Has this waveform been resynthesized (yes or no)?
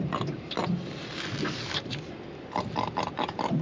no